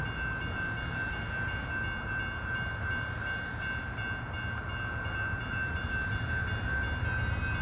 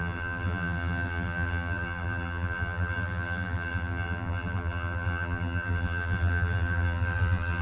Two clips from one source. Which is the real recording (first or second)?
first